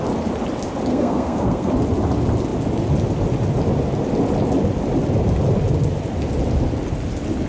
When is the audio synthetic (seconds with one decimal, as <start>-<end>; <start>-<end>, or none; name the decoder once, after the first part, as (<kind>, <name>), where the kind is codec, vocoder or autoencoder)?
0.9-1.7 (codec, SNAC)